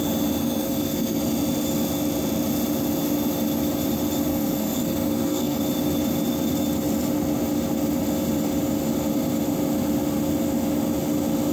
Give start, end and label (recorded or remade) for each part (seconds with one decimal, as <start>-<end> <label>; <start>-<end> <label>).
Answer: 0.0-0.4 recorded; 0.4-1.2 remade; 1.2-4.3 recorded; 4.3-5.6 remade; 5.6-11.5 recorded